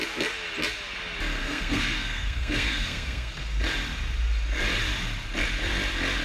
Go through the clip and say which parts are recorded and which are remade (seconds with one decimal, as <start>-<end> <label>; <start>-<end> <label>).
0.0-1.4 recorded; 1.4-3.3 remade; 3.3-6.2 recorded